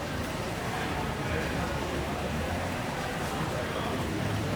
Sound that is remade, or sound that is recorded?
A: remade